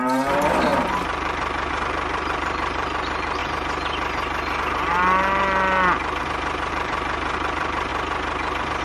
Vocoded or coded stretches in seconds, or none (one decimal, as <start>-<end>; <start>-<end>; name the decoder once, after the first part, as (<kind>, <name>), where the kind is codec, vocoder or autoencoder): 0.0-3.4 (vocoder, BigVGAN v2); 6.7-7.9